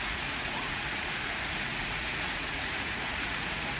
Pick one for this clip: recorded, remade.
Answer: remade